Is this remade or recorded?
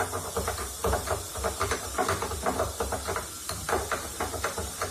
remade